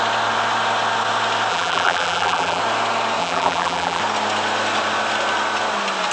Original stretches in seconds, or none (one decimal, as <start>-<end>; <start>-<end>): 0.0-1.5; 2.6-3.2; 4.0-6.1